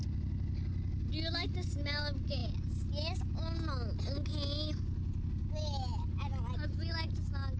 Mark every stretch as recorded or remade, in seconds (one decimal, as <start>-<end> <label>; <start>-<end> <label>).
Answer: 0.0-7.6 recorded